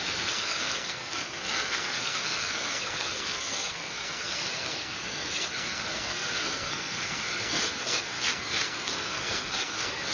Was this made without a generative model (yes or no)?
no